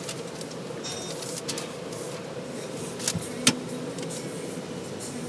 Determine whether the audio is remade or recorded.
recorded